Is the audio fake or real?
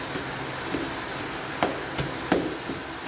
real